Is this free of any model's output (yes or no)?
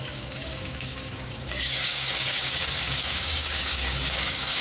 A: no